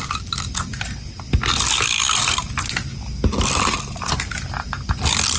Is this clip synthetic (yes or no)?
no